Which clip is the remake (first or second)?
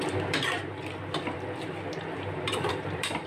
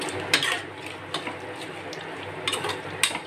first